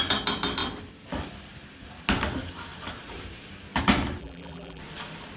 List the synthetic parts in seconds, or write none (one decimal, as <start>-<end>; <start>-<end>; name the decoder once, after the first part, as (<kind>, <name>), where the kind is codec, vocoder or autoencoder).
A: 4.2-4.8 (vocoder, BigVGAN v2)